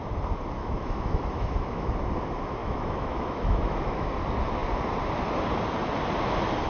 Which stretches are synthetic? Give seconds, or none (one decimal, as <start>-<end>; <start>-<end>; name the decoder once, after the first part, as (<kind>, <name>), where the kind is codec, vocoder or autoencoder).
0.6-1.9 (autoencoder, DAC-VAE); 2.6-4.1